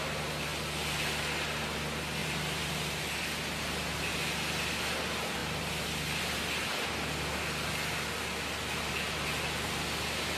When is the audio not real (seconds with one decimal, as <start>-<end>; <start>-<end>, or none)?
2.2-3.0